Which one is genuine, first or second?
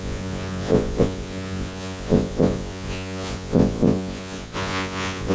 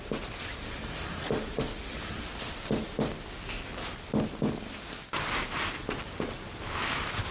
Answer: second